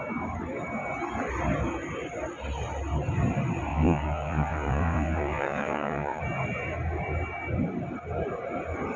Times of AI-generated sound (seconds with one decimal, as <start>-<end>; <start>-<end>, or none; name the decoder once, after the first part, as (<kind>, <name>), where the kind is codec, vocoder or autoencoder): 3.7-6.2 (vocoder, WaveNeXt)